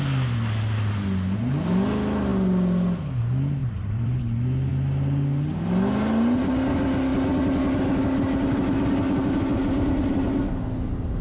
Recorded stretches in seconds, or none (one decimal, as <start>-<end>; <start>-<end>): 0.0-3.6; 4.2-11.2